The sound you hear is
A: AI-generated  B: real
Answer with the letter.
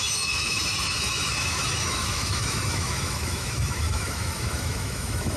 A